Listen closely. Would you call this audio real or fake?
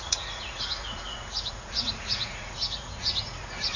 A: fake